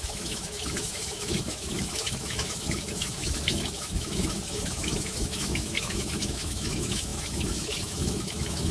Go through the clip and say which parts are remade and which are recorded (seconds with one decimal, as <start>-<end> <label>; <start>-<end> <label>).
0.0-8.7 remade